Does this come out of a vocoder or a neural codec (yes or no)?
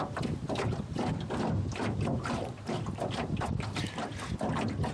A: no